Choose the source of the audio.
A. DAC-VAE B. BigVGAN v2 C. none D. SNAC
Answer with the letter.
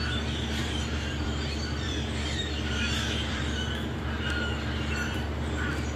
B